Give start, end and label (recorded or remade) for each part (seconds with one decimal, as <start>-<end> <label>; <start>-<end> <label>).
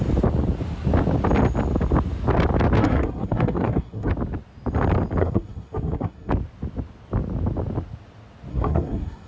0.0-2.8 recorded; 2.8-4.1 remade; 4.1-5.2 recorded; 5.2-6.3 remade; 6.3-8.5 recorded; 8.5-9.3 remade